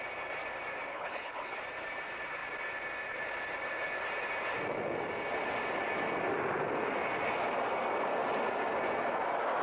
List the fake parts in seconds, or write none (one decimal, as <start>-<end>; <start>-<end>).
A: 0.9-1.6